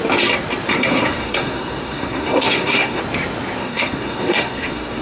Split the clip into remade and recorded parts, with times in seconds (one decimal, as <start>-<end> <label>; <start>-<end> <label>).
0.0-0.7 recorded; 0.7-3.0 remade; 3.0-3.6 recorded; 3.6-5.0 remade